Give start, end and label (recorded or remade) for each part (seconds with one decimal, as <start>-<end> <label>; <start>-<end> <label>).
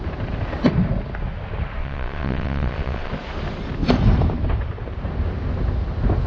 0.0-1.8 recorded; 1.8-3.1 remade; 3.1-6.3 recorded